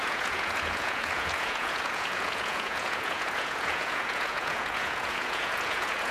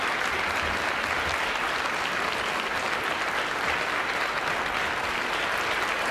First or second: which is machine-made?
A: first